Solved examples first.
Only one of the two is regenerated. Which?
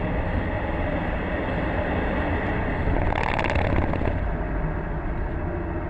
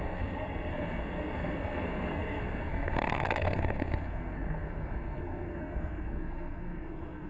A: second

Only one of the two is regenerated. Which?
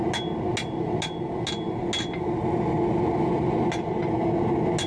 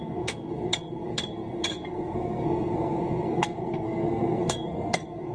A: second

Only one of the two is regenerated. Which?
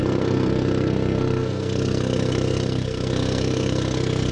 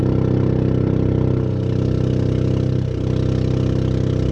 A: first